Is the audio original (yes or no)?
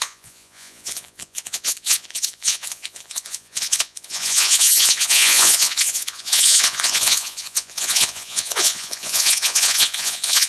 no